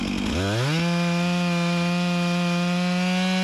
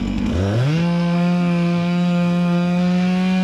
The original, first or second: first